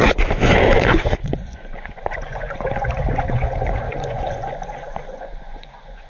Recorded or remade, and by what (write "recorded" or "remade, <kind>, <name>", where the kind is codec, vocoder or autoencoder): remade, vocoder, Vocos